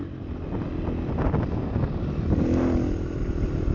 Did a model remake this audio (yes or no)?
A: no